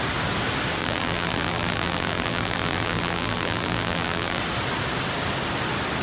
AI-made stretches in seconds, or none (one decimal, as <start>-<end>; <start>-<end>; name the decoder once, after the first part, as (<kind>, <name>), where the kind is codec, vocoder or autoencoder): 0.8-4.4 (vocoder, BigVGAN v2)